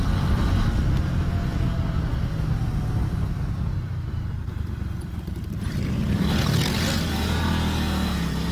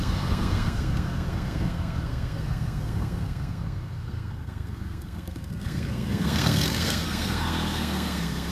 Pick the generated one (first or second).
second